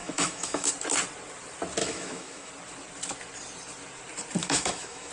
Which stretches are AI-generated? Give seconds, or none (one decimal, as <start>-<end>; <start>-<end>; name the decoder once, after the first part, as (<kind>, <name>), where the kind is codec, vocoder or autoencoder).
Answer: 0.0-0.7 (autoencoder, DAC-VAE); 1.8-2.5; 4.4-5.1